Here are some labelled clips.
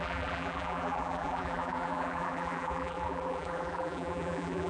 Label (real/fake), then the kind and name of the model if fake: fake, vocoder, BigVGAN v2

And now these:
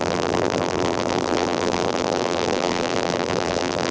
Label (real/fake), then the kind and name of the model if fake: fake, vocoder, BigVGAN v2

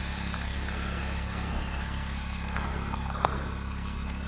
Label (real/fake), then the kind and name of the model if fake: fake, codec, SNAC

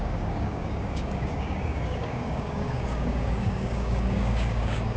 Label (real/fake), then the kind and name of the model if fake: fake, codec, DAC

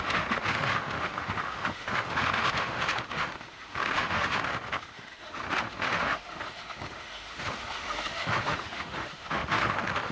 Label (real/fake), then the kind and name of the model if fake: fake, autoencoder, DAC-VAE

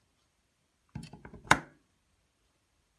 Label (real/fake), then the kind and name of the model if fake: fake, vocoder, BigVGAN v2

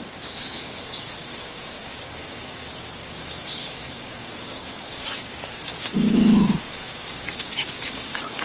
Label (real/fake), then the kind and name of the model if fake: fake, codec, DAC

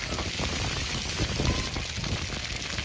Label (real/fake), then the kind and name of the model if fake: real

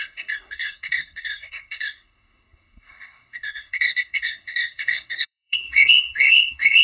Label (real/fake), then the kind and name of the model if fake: fake, codec, SNAC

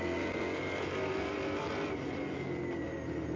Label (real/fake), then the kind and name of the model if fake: real